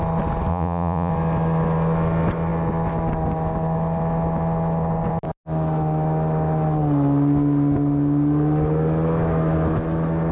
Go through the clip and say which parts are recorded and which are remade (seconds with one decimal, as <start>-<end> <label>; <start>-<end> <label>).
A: 0.0-0.5 recorded; 0.5-1.1 remade; 1.1-10.3 recorded